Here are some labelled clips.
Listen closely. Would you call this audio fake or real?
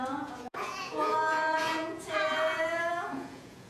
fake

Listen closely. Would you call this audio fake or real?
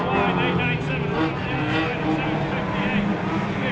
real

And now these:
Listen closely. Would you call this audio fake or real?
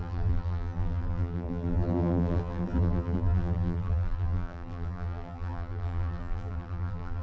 fake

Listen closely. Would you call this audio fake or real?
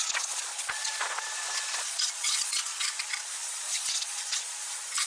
fake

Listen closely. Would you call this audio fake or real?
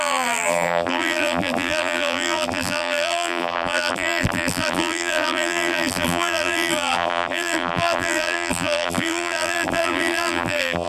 fake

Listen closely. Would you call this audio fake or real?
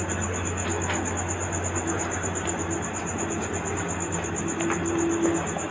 real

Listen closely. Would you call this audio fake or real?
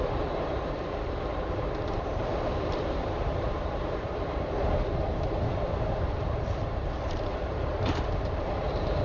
fake